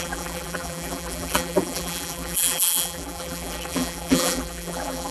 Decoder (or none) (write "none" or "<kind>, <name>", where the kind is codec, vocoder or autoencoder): vocoder, BigVGAN v2